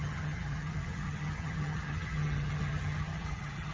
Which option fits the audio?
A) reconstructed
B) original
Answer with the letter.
A